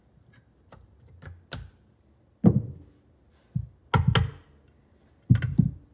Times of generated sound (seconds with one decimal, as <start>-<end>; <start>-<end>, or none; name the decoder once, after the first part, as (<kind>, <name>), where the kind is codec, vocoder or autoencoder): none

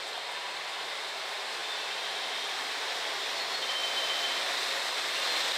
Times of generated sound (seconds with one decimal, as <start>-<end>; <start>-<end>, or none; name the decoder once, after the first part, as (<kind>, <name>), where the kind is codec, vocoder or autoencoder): none

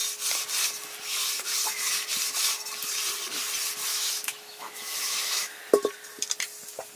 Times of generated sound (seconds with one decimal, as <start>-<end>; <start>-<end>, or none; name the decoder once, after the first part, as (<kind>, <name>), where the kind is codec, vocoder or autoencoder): 3.9-5.6 (autoencoder, DAC-VAE)

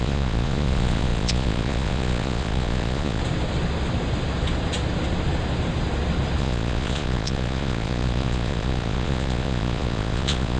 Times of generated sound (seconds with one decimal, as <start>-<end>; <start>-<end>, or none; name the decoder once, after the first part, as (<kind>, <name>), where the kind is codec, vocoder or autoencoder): 0.0-3.2 (vocoder, Vocos); 6.4-10.6

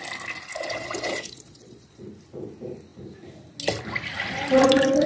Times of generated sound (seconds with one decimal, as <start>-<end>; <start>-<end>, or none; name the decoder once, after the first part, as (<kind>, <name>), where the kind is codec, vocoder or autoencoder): 0.5-2.0 (vocoder, Vocos)